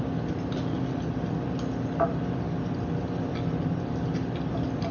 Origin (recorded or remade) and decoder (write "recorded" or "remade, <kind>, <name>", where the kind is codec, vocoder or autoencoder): recorded